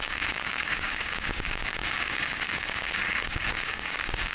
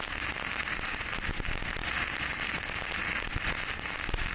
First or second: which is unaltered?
second